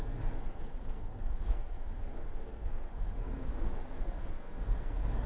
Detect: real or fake fake